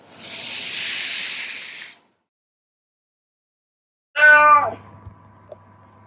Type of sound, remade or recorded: recorded